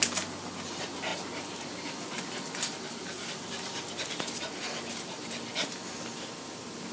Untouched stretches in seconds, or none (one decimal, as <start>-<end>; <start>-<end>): 0.0-6.9